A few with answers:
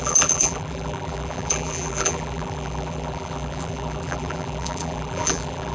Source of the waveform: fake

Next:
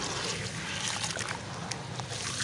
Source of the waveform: real